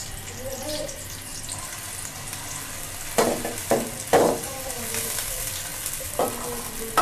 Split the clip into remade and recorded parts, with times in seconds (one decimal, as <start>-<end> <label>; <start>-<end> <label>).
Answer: 0.0-1.3 remade; 1.3-3.6 recorded; 3.6-5.7 remade; 5.7-7.0 recorded